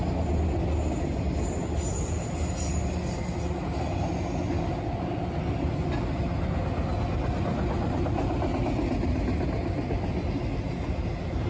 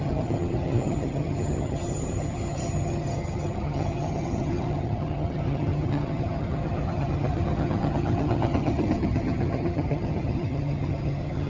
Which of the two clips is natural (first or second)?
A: first